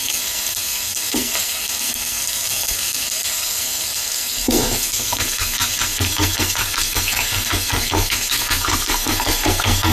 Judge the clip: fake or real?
fake